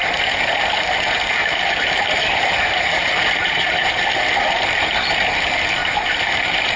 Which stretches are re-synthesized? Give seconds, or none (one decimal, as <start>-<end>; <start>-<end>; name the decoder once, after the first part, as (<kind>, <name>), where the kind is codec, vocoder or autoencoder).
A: 1.4-4.1 (vocoder, BigVGAN v2); 5.8-6.8